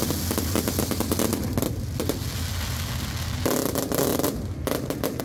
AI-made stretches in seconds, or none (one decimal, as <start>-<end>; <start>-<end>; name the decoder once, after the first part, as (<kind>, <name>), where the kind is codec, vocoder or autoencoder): none